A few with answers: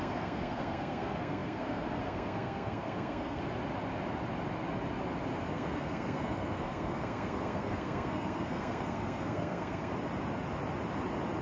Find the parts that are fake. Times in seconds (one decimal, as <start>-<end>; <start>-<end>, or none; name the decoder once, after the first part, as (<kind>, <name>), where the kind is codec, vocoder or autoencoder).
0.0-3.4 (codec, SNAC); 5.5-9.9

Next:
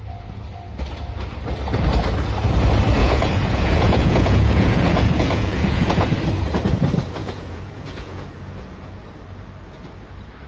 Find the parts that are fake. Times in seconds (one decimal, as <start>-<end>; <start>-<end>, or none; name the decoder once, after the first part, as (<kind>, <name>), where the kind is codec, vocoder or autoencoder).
3.0-6.1 (vocoder, Vocos); 7.2-9.0

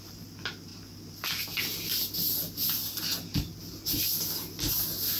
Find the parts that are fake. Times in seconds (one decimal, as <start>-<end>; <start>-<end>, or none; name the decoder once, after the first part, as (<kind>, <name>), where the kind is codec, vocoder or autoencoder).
none

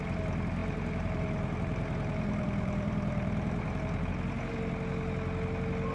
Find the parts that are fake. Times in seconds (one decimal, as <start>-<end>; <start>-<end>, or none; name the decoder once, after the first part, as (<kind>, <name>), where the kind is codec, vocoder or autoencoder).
0.6-4.1 (vocoder, BigVGAN v2)

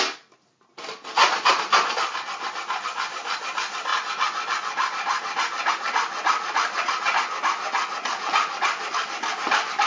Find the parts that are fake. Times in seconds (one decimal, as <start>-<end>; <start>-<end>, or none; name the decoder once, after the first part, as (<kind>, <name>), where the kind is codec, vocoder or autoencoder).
none